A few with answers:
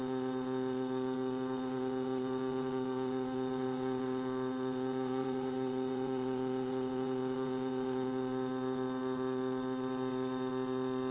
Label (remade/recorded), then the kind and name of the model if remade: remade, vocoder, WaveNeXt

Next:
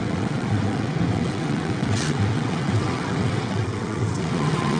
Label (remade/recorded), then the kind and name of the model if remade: remade, vocoder, WaveNeXt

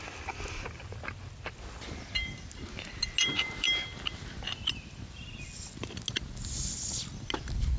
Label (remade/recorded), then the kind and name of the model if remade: recorded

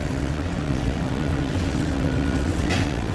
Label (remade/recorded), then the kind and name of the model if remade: remade, vocoder, WaveNeXt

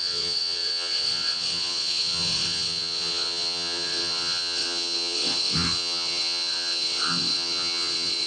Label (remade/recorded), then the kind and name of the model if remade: remade, vocoder, WaveNeXt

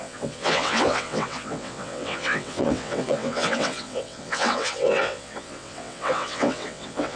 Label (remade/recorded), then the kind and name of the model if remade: remade, vocoder, WaveNeXt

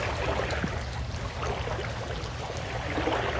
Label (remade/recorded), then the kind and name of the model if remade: recorded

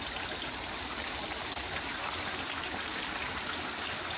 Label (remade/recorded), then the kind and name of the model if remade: recorded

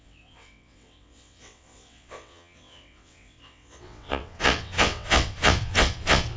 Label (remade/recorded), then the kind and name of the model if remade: remade, vocoder, WaveNeXt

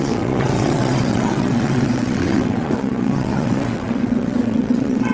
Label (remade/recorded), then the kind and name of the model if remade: remade, vocoder, WaveNeXt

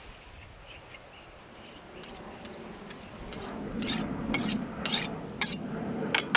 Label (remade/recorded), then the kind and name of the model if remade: recorded